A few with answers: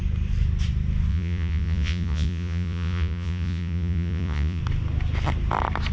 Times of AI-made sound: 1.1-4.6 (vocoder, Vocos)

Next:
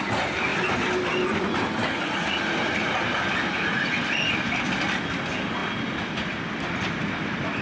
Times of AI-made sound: none

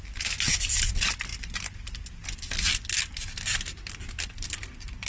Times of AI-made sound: none